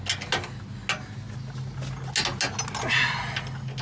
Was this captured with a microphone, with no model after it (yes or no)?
yes